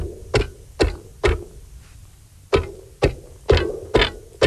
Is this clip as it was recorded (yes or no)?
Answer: yes